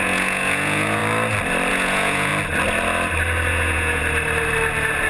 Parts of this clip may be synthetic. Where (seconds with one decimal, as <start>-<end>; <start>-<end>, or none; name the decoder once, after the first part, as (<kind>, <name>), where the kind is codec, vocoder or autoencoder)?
0.0-1.0 (vocoder, Vocos); 1.7-2.3; 3.5-4.0

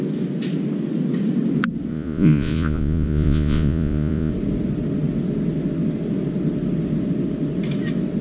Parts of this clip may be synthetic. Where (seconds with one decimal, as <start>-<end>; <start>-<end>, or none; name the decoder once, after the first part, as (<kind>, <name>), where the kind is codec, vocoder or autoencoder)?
1.9-4.3 (vocoder, Vocos)

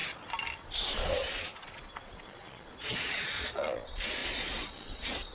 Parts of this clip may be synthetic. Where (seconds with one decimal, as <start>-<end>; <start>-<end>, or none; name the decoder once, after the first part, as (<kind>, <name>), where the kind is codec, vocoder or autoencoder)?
0.9-5.3 (vocoder, Vocos)

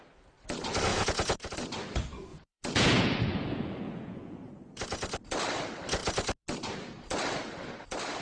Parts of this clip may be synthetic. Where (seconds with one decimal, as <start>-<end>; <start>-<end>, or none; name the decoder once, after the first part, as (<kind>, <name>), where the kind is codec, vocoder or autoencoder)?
0.9-1.5 (vocoder, Vocos); 2.3-4.5

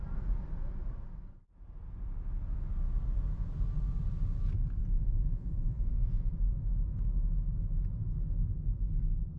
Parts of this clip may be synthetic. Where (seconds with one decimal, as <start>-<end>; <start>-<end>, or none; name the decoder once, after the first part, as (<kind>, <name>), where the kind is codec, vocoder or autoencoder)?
4.8-6.3 (vocoder, Vocos)

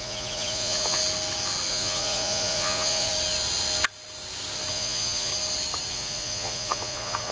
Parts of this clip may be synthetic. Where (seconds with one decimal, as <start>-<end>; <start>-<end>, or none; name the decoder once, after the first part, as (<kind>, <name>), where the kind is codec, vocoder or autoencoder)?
0.0-1.0 (vocoder, Vocos); 1.7-3.1; 4.7-5.3; 5.9-7.3